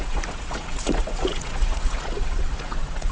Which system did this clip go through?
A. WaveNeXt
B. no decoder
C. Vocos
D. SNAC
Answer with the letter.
C